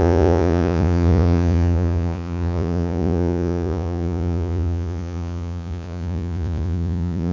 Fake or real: fake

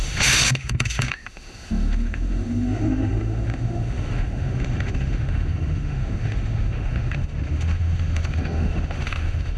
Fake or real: fake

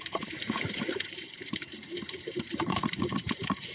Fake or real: fake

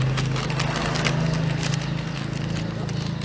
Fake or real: real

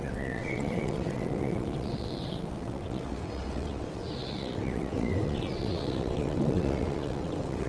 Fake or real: fake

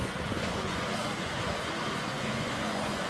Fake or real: fake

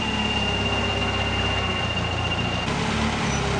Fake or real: real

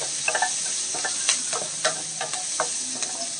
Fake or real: real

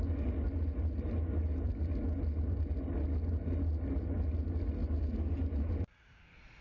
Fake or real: real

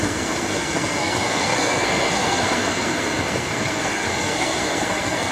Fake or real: fake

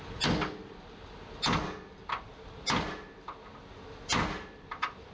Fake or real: real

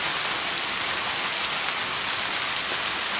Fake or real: real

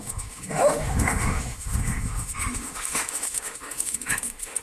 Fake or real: fake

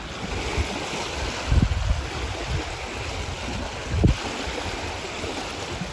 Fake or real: real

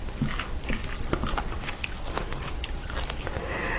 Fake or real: real